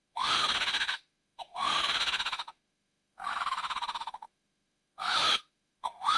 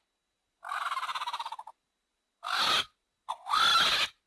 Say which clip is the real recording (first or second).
second